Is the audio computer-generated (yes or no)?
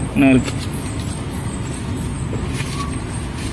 no